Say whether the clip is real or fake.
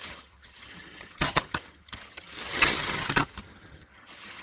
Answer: fake